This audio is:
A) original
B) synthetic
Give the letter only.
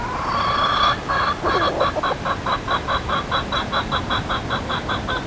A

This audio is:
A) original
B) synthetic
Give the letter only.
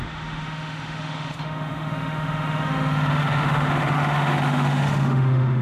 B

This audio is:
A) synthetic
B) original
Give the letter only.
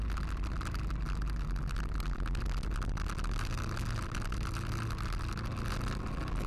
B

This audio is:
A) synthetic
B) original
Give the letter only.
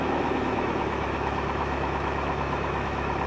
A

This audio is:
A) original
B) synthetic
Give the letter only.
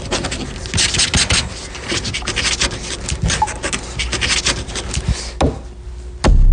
A